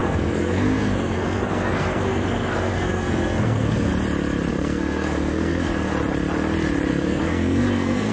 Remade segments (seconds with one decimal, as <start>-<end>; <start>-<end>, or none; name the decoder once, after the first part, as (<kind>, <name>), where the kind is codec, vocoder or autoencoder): 0.0-3.9 (codec, SNAC); 4.5-5.9; 6.9-8.1